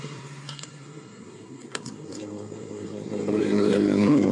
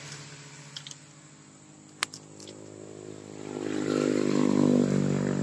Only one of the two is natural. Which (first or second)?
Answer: second